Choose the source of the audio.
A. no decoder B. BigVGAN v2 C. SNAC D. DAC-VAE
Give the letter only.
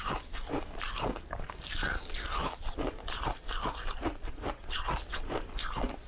A